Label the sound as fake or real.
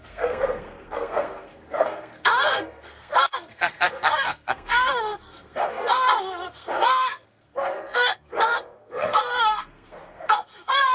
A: fake